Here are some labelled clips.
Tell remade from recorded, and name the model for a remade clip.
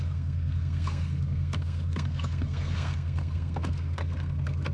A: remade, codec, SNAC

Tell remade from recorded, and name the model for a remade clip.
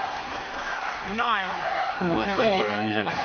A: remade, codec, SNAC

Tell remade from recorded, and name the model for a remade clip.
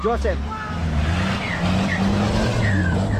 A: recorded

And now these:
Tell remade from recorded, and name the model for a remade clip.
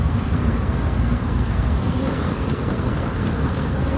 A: remade, codec, SNAC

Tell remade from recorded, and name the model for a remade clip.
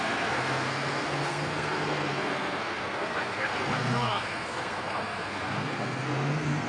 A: remade, codec, SNAC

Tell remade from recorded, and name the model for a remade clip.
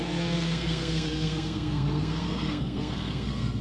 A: remade, codec, SNAC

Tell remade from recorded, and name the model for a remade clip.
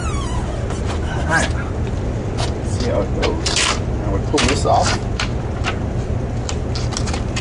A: recorded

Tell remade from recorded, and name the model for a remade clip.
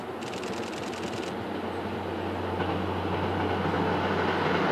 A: recorded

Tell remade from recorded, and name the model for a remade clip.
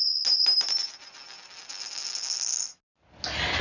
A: recorded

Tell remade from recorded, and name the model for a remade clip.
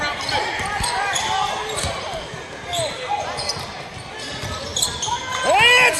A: recorded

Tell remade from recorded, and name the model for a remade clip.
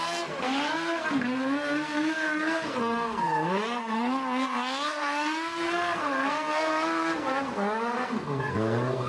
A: remade, codec, SNAC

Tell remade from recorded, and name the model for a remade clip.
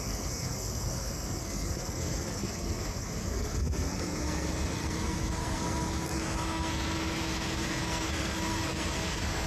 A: remade, codec, SNAC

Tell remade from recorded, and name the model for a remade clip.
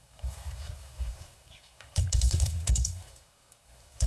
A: remade, codec, SNAC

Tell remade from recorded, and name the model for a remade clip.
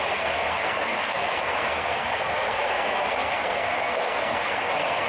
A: remade, codec, SNAC